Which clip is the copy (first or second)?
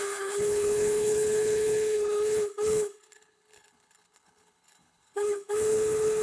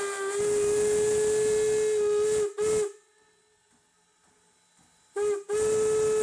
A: first